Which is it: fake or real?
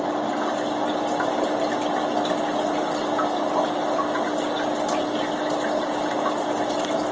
real